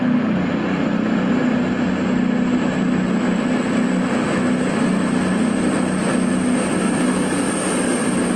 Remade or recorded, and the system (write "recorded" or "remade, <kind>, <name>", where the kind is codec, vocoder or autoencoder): recorded